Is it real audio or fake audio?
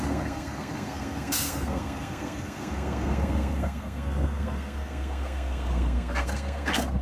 fake